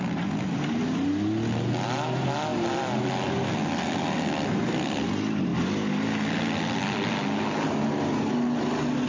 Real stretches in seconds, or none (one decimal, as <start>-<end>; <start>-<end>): 0.0-2.5; 3.1-9.1